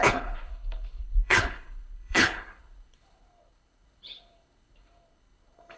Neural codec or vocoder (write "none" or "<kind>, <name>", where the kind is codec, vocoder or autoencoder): codec, HILCodec